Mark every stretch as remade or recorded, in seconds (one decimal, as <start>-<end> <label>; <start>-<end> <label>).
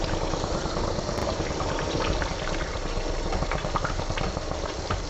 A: 0.0-5.1 recorded